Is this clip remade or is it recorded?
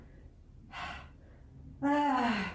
recorded